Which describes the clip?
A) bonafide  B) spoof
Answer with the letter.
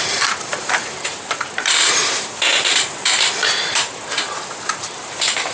B